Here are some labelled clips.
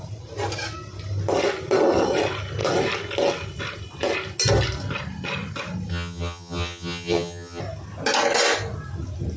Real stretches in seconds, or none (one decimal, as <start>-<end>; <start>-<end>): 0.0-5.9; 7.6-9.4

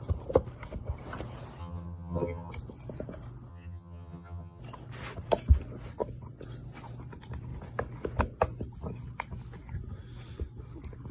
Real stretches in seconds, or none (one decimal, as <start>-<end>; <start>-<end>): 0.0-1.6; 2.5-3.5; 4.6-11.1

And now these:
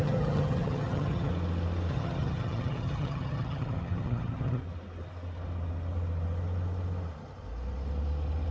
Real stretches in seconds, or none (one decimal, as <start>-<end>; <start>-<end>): 1.3-1.9; 4.6-8.5